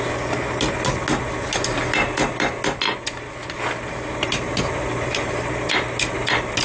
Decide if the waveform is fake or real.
real